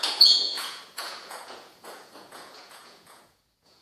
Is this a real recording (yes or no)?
no